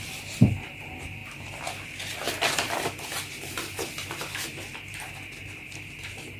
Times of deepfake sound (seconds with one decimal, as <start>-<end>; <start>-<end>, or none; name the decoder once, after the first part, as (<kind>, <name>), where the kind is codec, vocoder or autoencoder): 0.0-1.2 (vocoder, BigVGAN v2); 3.5-6.4